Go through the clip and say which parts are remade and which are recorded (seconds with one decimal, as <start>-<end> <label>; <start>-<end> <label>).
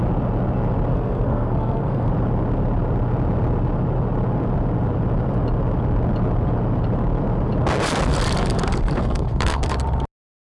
0.0-0.9 recorded; 0.9-2.1 remade; 2.1-9.0 recorded; 9.0-9.7 remade; 9.7-10.5 recorded